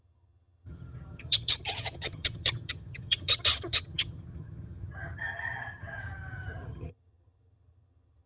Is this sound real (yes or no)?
no